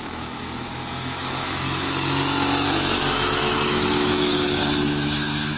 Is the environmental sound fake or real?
fake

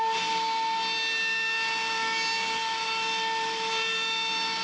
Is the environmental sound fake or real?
real